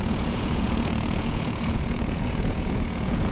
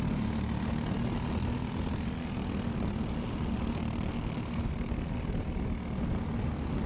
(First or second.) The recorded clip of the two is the second